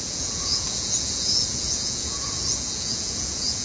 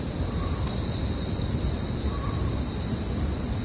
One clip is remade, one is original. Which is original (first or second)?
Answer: second